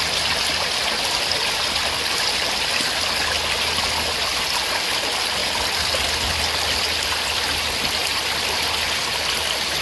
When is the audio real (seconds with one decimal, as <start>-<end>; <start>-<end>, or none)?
0.0-9.8